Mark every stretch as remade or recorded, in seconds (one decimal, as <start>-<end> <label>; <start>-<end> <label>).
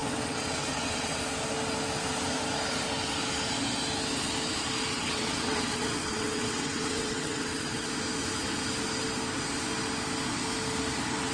0.0-1.2 remade; 1.2-4.9 recorded; 4.9-7.9 remade; 7.9-11.3 recorded